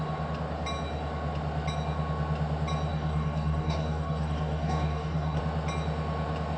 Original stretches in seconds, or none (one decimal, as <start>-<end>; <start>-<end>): 0.0-2.9; 5.4-6.6